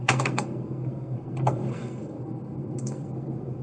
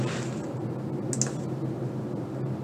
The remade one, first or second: first